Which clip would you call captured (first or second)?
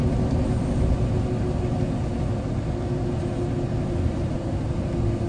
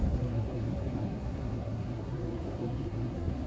first